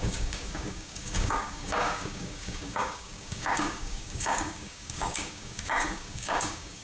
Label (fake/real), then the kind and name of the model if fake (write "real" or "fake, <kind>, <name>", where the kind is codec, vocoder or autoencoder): fake, codec, DAC